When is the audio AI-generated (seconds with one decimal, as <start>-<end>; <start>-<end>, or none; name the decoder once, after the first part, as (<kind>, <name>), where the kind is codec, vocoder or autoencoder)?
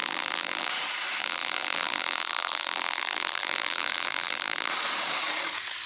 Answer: 0.0-0.7 (vocoder, BigVGAN v2); 1.2-4.7